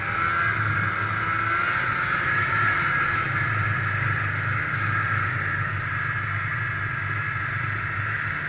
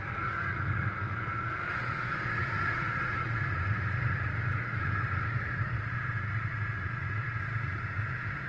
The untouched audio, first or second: first